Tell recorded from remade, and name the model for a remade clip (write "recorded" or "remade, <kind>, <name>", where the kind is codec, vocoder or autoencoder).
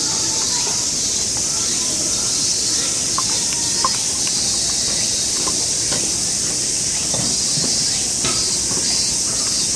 recorded